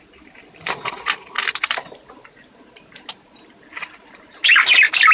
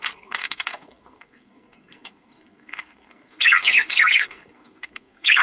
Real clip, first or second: first